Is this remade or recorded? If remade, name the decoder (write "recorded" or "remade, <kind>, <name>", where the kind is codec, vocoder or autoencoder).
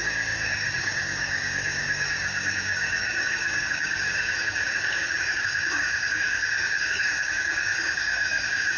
remade, codec, DAC